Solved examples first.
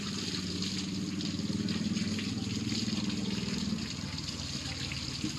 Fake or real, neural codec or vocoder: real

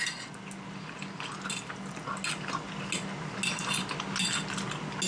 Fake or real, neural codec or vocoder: real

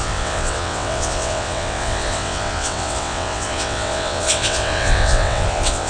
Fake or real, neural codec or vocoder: fake, vocoder, WaveNeXt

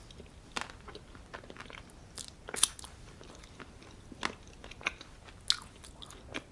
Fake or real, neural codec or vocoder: real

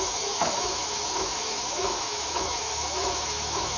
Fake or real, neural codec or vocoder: fake, autoencoder, DAC-VAE